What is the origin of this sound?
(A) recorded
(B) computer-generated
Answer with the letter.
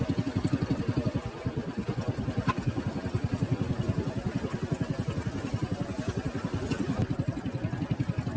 A